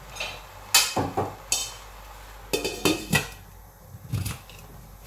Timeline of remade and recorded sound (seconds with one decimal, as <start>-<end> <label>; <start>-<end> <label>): 0.0-5.1 recorded